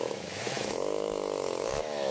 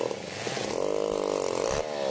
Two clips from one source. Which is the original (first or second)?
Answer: second